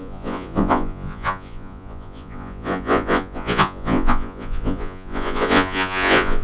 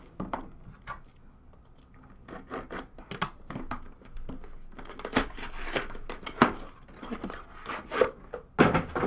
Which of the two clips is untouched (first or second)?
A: second